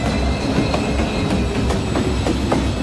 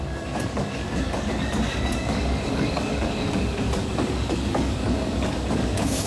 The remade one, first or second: second